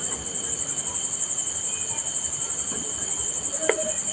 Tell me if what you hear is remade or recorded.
recorded